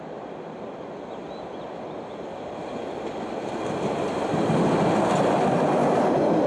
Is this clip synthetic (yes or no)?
no